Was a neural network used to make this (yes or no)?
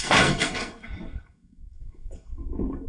yes